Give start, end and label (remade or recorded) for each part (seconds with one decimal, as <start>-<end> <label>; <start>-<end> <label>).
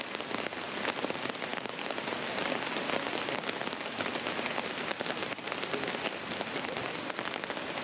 0.0-7.8 recorded